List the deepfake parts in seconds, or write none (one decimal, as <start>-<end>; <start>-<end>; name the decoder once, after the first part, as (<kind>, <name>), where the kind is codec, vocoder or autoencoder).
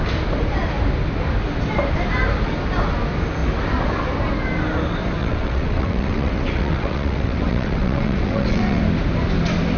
5.2-8.8 (vocoder, WaveNeXt)